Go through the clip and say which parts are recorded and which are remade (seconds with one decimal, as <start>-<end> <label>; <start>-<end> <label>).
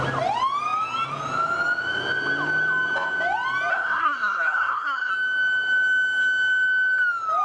0.0-3.7 recorded; 3.7-5.1 remade; 5.1-7.4 recorded